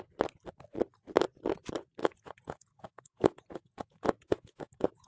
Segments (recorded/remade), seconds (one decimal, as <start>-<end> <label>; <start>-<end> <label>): 0.0-2.0 recorded; 2.0-5.1 remade